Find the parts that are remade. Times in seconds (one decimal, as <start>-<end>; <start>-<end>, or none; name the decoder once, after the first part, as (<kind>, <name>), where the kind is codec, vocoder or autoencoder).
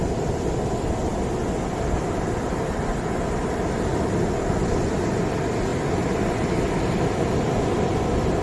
none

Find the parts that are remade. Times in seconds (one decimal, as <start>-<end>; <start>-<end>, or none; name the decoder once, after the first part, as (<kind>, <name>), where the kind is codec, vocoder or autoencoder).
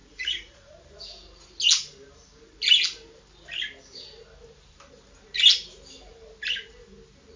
0.0-0.7 (vocoder, Vocos)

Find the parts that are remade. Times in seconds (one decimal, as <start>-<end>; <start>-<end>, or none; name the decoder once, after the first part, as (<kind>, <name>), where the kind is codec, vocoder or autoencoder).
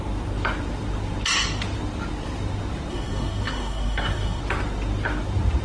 2.9-4.4 (codec, SNAC)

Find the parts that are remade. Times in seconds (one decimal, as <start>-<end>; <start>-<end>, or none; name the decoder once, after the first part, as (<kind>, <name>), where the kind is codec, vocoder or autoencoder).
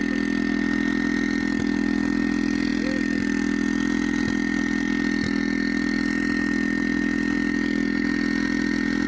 none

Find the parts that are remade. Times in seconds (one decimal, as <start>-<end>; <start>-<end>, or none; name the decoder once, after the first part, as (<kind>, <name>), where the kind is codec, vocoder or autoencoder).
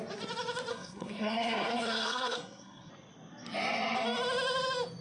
0.7-2.9 (codec, SNAC)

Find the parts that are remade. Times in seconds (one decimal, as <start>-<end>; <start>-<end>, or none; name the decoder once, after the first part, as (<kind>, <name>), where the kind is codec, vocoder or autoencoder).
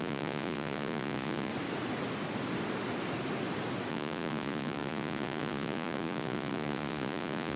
0.0-1.5 (vocoder, Vocos); 3.9-7.6